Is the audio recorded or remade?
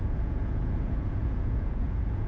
remade